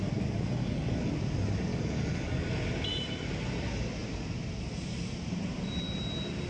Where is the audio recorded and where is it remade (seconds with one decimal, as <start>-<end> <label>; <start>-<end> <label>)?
0.0-0.5 recorded; 0.5-1.1 remade; 1.1-1.7 recorded; 1.7-2.5 remade; 2.5-6.5 recorded